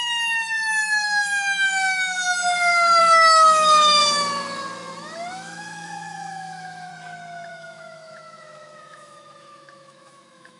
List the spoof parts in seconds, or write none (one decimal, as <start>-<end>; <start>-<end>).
0.0-2.4; 3.0-4.0; 5.3-6.9; 7.5-10.6